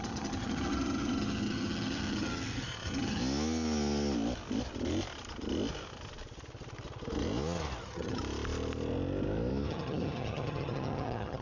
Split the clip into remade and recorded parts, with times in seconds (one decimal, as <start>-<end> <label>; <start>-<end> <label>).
0.0-3.2 remade; 3.2-7.8 recorded; 7.8-8.2 remade; 8.2-9.7 recorded; 9.7-11.4 remade